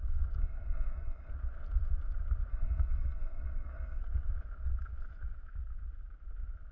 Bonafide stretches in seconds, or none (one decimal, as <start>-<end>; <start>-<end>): 0.0-0.4; 1.3-2.5; 4.0-6.7